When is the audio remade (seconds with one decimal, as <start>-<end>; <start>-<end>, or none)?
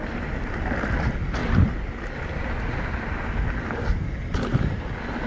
none